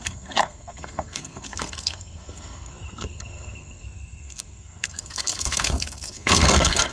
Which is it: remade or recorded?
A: remade